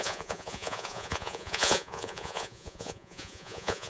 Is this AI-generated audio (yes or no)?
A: yes